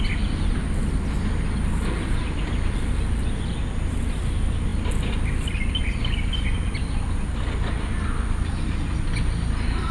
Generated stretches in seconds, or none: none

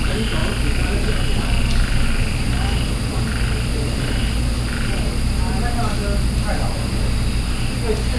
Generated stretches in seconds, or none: 0.4-5.0

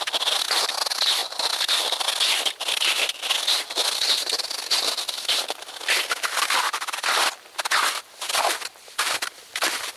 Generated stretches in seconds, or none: none